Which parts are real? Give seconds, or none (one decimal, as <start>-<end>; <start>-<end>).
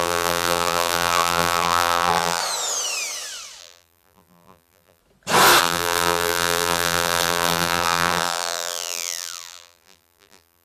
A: 2.4-3.6; 5.0-5.6